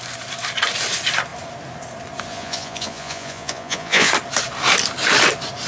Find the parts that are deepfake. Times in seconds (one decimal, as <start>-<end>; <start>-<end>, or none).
2.3-4.1